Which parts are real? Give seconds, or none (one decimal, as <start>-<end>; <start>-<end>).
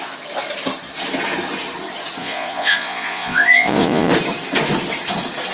0.0-2.2; 4.1-5.5